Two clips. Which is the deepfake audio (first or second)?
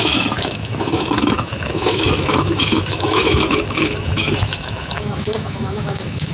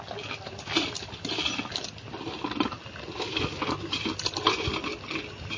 first